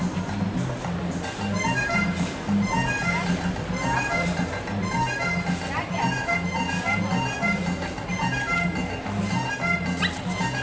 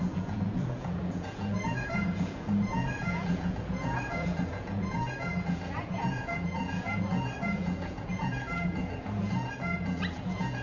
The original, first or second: first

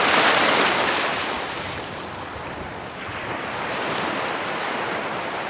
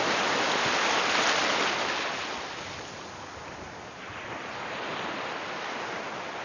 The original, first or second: second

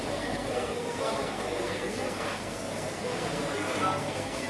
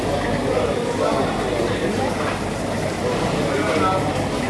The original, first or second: second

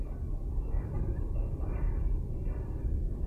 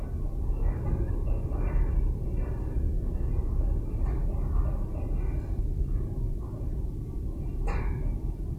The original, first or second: second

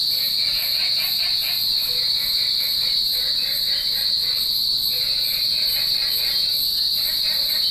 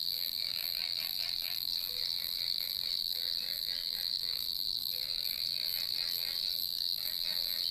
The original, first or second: first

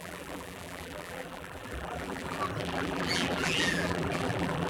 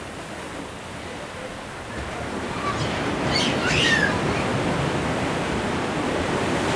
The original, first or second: second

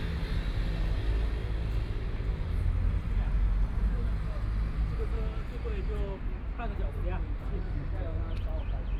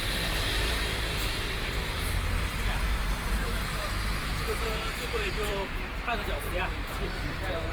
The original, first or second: first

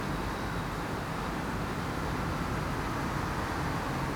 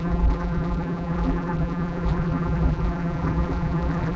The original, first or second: first